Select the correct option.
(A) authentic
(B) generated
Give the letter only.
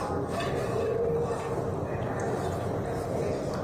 A